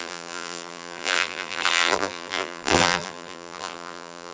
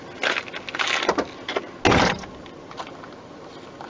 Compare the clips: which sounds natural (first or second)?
second